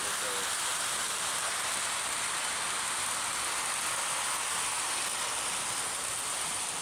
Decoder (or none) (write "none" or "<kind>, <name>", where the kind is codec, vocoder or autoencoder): none